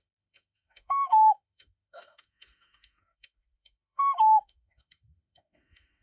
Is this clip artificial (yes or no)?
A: yes